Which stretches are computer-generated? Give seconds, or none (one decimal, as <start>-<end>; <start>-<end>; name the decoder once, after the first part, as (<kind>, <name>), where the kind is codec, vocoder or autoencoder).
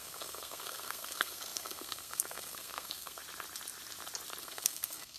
0.0-3.2 (codec, SNAC); 4.4-5.2